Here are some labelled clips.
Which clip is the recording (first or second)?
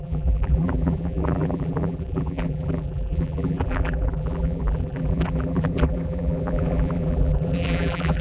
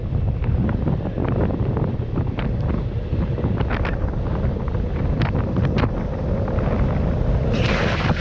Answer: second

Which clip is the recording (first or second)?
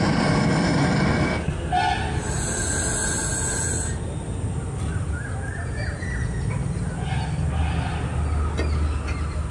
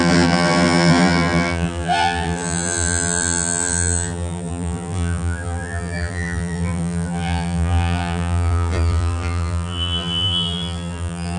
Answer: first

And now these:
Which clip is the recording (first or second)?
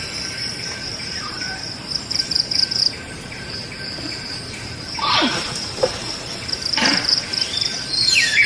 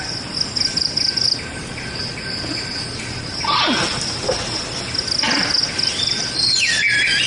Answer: second